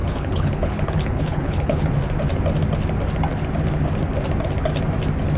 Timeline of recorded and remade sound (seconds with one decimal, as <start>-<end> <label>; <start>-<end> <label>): 0.0-1.9 remade; 1.9-5.4 recorded